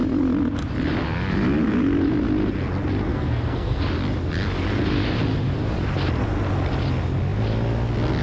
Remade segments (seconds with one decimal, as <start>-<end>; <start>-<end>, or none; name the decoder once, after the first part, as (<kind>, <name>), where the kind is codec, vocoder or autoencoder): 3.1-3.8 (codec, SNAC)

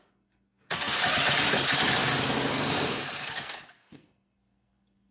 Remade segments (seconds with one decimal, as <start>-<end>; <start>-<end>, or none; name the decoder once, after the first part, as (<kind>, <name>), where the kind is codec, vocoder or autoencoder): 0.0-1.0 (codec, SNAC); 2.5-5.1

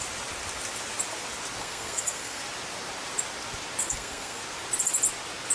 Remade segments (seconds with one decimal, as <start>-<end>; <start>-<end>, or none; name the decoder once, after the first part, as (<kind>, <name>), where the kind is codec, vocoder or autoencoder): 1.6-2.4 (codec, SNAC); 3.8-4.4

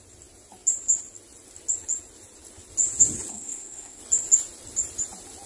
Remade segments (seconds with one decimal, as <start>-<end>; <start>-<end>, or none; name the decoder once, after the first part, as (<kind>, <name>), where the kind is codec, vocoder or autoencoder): 3.3-4.0 (codec, SNAC)

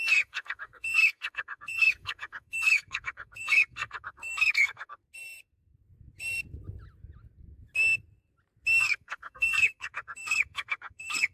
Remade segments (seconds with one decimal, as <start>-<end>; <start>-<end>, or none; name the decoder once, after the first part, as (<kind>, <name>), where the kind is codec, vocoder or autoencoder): 0.0-5.0 (codec, SNAC); 8.8-11.3

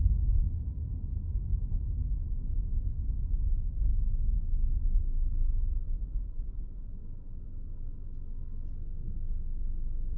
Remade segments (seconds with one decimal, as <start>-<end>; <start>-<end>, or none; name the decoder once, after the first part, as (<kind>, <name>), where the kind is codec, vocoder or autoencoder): none

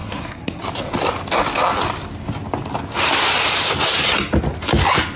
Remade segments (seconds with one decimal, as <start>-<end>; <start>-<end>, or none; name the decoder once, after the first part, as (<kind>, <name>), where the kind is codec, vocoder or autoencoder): 0.0-0.6 (codec, SNAC)

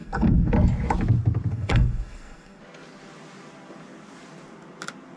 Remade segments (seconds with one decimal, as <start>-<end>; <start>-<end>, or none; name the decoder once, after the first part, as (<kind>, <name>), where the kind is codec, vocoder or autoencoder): 0.0-0.5 (codec, SNAC); 1.5-2.6